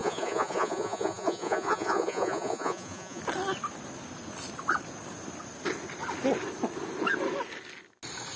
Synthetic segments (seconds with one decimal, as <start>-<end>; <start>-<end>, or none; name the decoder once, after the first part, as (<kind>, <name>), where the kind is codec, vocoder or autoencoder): 0.0-3.2 (vocoder, Vocos)